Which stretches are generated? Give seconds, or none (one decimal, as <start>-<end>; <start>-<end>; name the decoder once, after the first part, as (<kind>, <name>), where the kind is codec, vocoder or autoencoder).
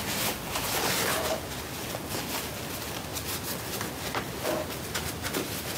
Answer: none